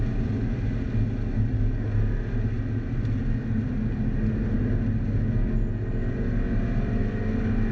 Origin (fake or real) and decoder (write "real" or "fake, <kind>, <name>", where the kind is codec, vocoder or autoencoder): real